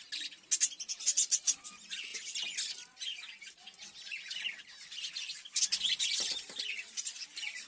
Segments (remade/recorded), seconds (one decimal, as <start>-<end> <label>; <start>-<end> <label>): 0.0-7.7 recorded